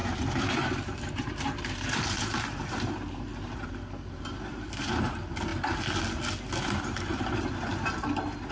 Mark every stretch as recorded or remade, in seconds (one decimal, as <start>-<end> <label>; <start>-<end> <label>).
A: 0.0-4.7 remade; 4.7-8.5 recorded